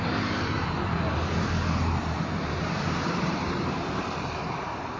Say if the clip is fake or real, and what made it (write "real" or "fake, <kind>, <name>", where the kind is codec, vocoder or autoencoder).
fake, vocoder, BigVGAN v2